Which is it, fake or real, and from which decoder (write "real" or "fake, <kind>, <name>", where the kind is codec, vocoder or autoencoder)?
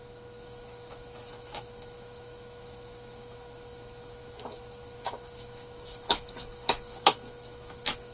fake, autoencoder, DAC-VAE